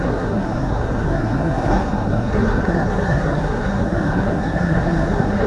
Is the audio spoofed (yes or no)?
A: yes